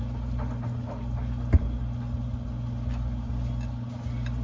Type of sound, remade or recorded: recorded